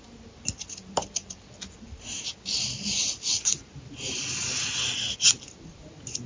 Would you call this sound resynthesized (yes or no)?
no